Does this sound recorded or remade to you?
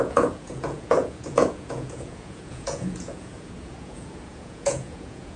remade